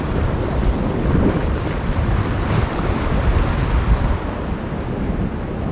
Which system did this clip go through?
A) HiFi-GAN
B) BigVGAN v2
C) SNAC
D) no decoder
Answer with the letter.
D